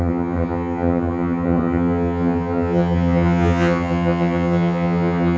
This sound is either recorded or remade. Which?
remade